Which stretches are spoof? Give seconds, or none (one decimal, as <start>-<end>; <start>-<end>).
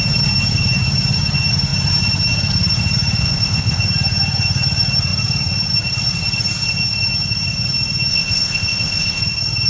3.2-3.8; 8.1-9.2